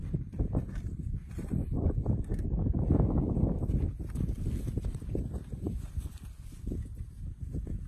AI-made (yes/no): no